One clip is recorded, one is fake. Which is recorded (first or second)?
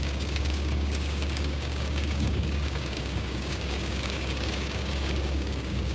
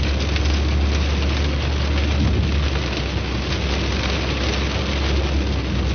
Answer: second